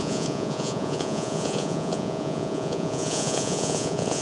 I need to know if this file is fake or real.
fake